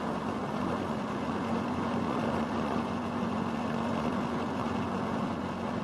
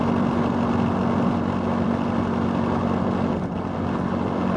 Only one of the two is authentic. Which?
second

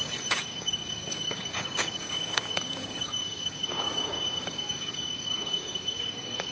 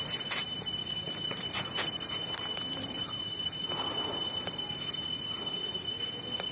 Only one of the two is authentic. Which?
second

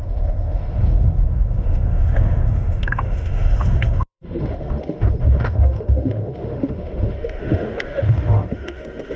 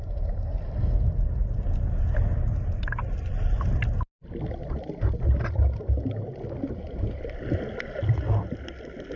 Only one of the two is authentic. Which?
second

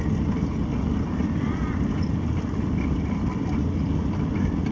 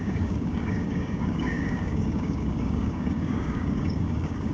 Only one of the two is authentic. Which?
first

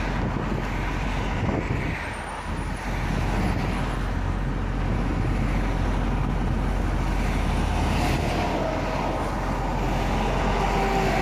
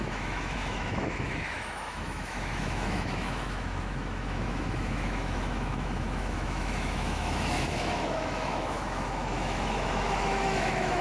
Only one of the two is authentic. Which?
first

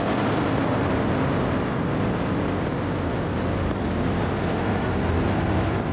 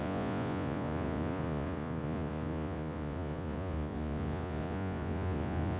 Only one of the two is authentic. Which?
first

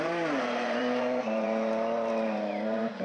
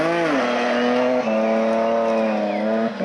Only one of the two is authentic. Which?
second